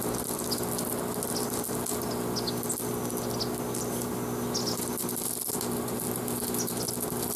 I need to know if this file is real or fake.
real